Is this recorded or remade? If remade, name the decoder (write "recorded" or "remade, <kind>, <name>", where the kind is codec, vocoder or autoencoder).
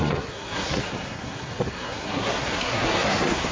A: remade, codec, SNAC